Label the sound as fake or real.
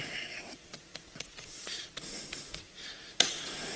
fake